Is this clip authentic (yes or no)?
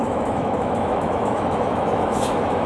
no